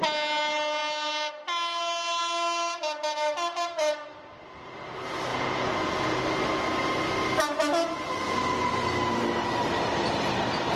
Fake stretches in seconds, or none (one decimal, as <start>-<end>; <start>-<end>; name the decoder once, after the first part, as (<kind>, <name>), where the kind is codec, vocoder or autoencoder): 5.3-6.2 (vocoder, Vocos)